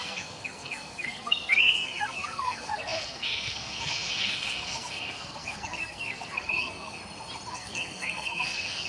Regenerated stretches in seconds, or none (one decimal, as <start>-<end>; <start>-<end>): 0.0-7.0; 7.5-8.9